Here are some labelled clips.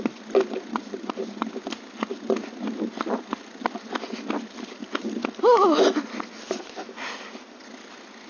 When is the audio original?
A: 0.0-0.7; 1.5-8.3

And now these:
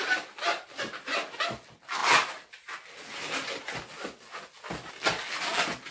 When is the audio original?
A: 0.0-5.9

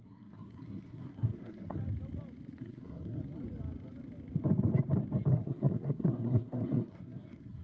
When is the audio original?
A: 1.8-2.6; 3.2-5.3

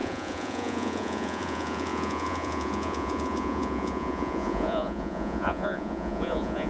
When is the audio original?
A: none

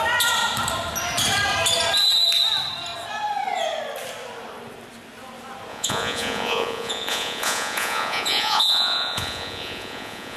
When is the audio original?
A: 0.0-5.7

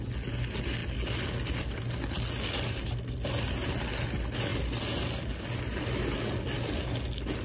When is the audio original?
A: 0.0-7.4

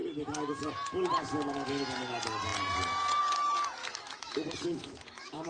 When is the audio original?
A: 0.0-3.8

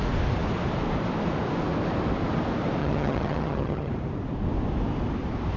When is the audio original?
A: 0.0-2.8; 3.9-5.6